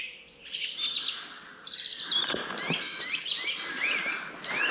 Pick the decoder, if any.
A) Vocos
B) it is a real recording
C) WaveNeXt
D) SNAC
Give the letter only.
B